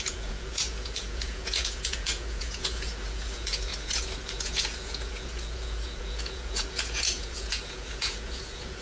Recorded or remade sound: remade